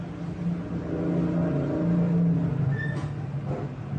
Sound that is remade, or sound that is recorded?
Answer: recorded